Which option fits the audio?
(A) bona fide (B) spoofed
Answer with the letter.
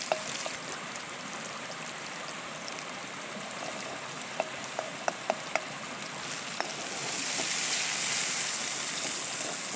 A